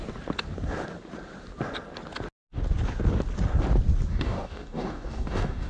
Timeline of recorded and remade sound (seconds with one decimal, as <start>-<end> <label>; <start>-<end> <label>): 0.0-4.1 recorded; 4.1-5.7 remade